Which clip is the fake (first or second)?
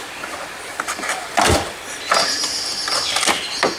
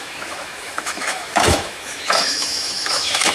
second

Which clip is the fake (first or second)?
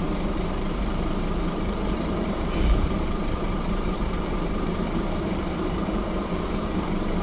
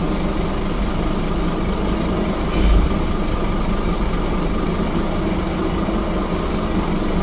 first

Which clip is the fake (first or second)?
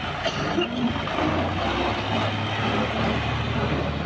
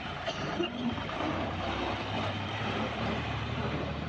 second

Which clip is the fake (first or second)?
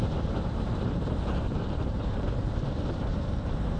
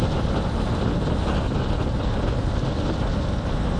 first